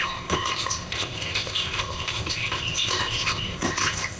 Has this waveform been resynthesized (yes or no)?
yes